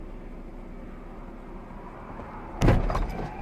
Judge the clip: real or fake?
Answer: real